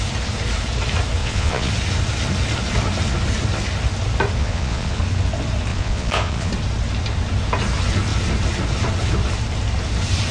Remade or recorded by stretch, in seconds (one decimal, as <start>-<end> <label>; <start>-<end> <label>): 0.0-1.2 recorded; 1.2-1.7 remade; 1.7-4.4 recorded; 4.4-5.0 remade; 5.0-5.7 recorded; 5.7-6.5 remade; 6.5-10.3 recorded